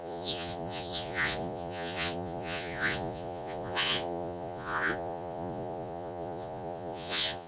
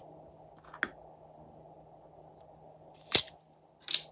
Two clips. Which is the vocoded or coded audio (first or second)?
first